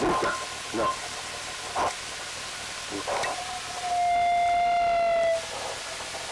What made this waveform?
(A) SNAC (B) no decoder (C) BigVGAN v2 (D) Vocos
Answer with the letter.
B